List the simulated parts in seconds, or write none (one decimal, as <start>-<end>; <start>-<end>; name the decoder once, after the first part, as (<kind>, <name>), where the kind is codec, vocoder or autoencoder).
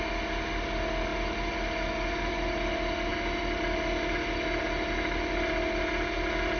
none